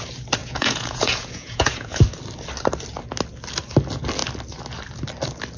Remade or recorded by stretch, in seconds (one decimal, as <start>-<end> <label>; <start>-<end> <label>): 0.0-0.4 recorded; 0.4-2.0 remade; 2.0-5.6 recorded